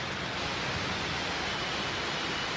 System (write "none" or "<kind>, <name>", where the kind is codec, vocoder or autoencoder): none